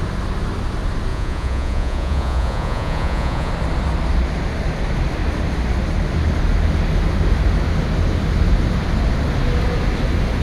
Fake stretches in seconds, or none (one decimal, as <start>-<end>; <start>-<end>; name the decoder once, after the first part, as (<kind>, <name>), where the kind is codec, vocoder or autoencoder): 1.1-3.5 (vocoder, Vocos)